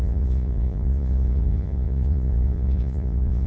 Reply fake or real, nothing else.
fake